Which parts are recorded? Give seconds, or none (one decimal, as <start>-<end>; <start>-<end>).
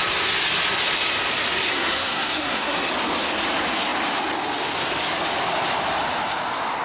0.0-1.7; 2.9-6.8